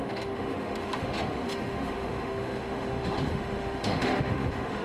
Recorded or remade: remade